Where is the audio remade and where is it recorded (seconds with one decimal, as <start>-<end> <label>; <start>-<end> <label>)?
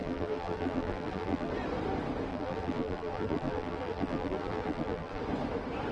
0.0-1.5 remade; 1.5-2.3 recorded; 2.3-5.2 remade; 5.2-5.9 recorded